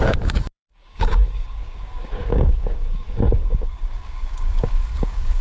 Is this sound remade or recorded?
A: remade